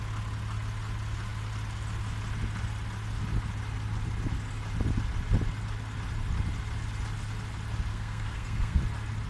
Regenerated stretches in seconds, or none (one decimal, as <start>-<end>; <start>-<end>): 7.9-8.8